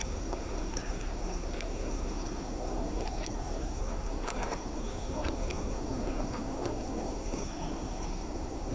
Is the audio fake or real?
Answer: fake